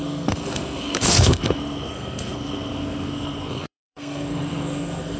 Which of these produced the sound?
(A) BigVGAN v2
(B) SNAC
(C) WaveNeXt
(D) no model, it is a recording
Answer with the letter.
B